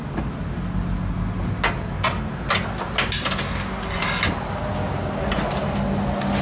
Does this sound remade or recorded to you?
recorded